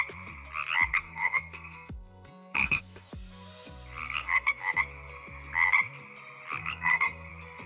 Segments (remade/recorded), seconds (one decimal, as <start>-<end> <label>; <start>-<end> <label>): 0.0-0.9 recorded; 0.9-3.1 remade; 3.1-4.0 recorded; 4.0-4.6 remade; 4.6-6.6 recorded; 6.6-7.3 remade; 7.3-7.7 recorded